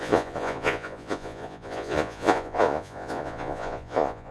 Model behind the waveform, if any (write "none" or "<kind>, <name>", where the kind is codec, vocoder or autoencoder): vocoder, Vocos